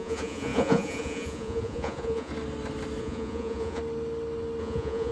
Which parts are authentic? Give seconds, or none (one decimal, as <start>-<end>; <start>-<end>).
2.3-3.0; 3.8-4.6